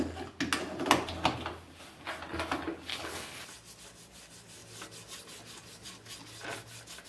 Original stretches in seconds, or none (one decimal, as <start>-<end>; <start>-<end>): 0.0-2.9; 3.4-7.1